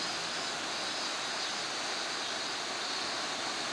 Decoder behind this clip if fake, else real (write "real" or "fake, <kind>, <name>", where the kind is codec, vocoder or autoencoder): real